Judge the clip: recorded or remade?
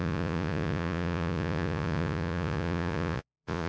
remade